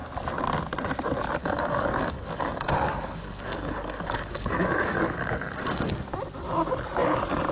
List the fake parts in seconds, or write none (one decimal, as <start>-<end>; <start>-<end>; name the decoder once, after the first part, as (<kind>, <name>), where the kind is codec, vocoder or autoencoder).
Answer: 1.4-5.9 (codec, DAC)